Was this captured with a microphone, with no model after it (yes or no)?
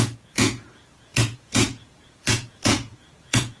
no